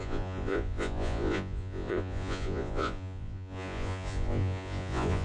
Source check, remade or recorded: remade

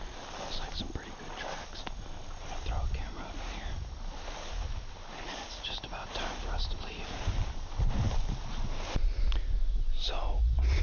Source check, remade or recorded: recorded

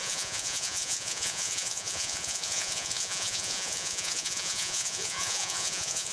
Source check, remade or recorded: remade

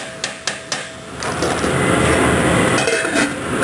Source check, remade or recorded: recorded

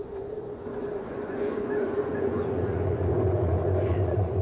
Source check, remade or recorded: remade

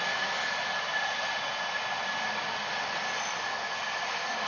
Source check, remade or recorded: recorded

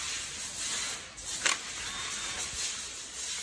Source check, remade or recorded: recorded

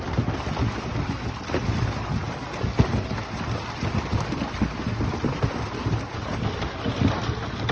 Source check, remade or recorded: recorded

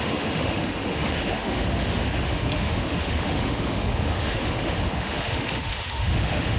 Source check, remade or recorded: remade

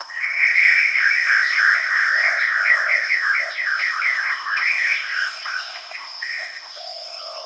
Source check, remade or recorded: remade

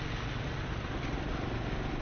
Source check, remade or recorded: recorded